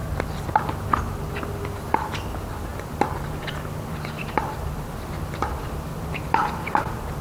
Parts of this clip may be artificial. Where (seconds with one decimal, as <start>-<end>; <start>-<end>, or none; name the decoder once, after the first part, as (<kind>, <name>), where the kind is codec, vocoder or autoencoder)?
0.0-1.0 (vocoder, BigVGAN v2); 2.7-5.0; 5.9-6.8